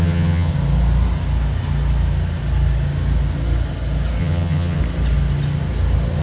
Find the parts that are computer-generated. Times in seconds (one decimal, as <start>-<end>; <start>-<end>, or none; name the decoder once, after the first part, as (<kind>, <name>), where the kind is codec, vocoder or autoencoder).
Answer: 0.0-0.5 (vocoder, HiFi-GAN); 4.2-4.8